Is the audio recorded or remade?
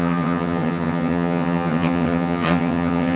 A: remade